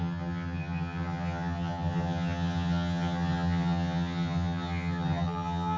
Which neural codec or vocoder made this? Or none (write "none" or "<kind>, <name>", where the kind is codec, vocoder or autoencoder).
vocoder, HiFi-GAN